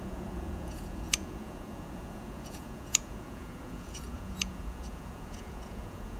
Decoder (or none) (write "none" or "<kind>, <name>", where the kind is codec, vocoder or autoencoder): vocoder, Vocos